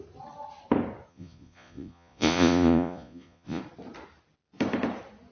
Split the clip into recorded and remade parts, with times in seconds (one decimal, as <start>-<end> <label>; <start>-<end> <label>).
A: 0.0-1.1 recorded; 1.1-3.6 remade; 3.6-5.3 recorded

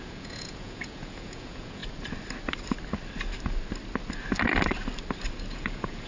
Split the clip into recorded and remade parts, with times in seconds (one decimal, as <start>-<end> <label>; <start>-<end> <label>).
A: 0.0-1.8 remade; 1.8-5.5 recorded; 5.5-6.1 remade

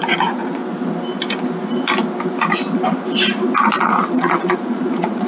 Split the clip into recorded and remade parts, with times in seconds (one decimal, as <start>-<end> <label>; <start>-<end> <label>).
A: 0.0-0.6 remade; 0.6-3.8 recorded; 3.8-5.3 remade

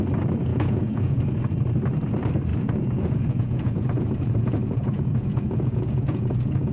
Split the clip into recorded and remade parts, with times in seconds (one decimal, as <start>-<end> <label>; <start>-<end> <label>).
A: 0.0-0.5 recorded; 0.5-1.2 remade; 1.2-2.5 recorded; 2.5-6.7 remade

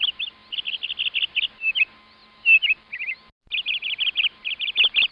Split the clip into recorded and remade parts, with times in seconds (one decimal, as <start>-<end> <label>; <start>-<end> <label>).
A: 0.0-5.1 recorded